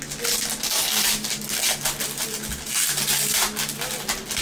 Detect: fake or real real